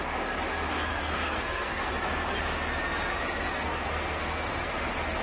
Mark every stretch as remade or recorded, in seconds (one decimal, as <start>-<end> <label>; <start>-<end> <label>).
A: 0.0-0.9 recorded; 0.9-1.9 remade; 1.9-3.5 recorded; 3.5-4.7 remade; 4.7-5.2 recorded